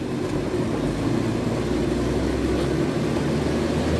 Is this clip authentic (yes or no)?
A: yes